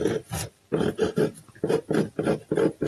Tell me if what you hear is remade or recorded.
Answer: recorded